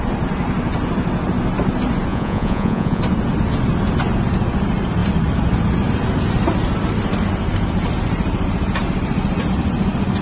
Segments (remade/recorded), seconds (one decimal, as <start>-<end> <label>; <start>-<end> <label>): 0.0-2.1 recorded; 2.1-3.0 remade; 3.0-10.2 recorded